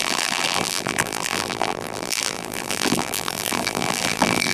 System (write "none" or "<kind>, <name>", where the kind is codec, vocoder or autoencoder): vocoder, BigVGAN v2